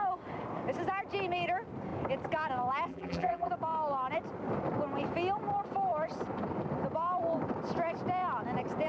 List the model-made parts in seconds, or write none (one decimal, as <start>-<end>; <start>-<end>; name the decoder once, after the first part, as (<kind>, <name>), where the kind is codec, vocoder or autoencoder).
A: 2.9-3.5 (vocoder, BigVGAN v2)